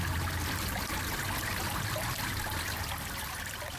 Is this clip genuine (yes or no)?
yes